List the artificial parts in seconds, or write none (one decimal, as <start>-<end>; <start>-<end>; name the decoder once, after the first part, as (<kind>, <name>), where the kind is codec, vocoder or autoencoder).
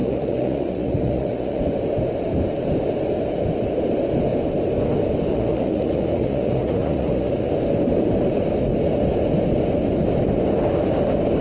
0.0-1.6 (vocoder, Vocos); 5.3-7.5